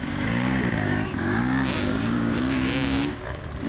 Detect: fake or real fake